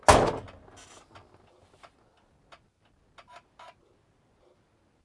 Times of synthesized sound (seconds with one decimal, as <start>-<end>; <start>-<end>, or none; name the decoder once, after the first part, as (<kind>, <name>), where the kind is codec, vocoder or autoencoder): none